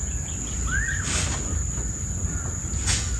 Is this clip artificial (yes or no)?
no